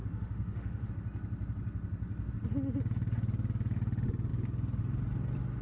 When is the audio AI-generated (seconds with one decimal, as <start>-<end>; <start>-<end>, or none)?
0.0-0.9